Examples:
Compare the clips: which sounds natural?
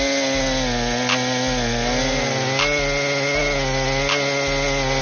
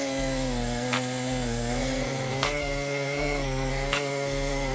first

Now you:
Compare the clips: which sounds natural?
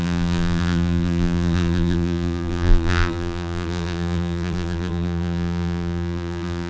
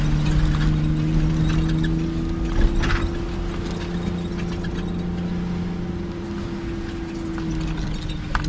second